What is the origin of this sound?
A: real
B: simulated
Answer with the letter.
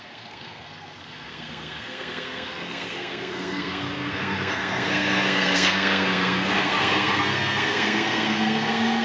B